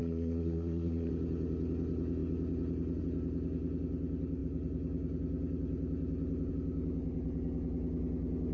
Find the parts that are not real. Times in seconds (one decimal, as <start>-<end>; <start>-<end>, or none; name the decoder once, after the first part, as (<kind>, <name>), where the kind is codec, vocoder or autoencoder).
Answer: 0.0-1.1 (codec, SNAC)